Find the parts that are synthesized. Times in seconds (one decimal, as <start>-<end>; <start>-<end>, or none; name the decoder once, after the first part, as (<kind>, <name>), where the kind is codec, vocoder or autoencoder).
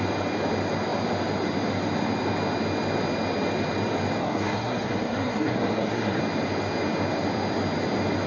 4.2-6.2 (codec, SNAC)